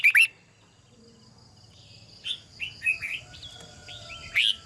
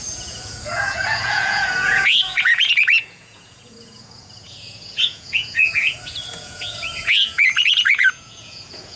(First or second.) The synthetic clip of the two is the second